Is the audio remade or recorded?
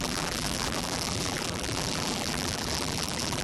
remade